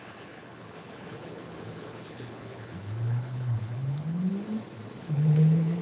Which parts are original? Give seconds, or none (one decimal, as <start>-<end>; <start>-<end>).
4.3-5.0